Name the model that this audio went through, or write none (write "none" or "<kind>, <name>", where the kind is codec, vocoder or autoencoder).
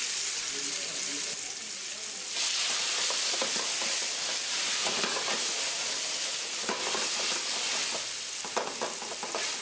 none